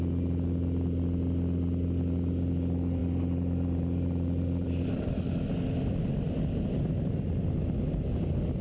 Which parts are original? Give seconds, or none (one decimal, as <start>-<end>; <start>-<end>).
0.0-3.0; 5.1-8.6